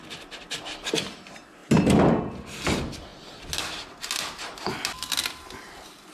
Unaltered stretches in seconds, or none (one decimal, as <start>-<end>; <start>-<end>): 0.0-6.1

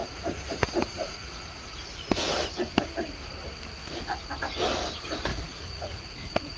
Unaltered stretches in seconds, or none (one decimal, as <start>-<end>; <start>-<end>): 1.9-5.3

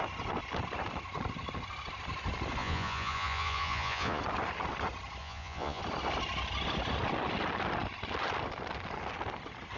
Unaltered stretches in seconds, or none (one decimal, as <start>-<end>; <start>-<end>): 0.0-2.6; 4.2-5.2; 5.8-9.8

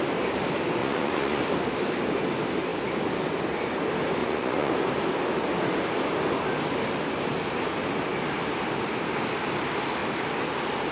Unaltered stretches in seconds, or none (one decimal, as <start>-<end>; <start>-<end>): 0.0-0.8; 1.4-4.2; 4.7-10.9

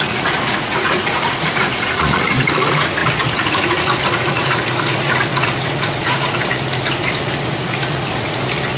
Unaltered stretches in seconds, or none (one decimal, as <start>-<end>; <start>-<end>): none